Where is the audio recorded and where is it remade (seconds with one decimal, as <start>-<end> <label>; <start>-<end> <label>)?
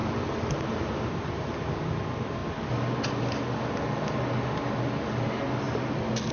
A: 0.0-1.8 remade; 1.8-6.3 recorded